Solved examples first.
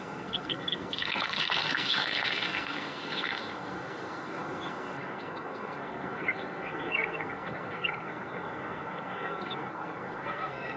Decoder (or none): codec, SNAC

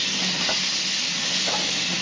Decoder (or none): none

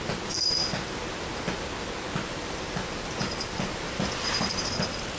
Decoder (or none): none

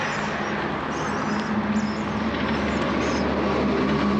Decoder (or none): none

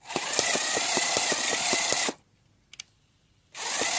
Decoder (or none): none